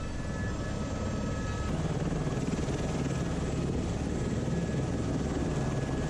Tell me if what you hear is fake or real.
real